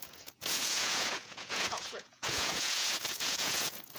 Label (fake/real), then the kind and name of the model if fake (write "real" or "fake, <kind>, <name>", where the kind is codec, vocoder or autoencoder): fake, vocoder, Vocos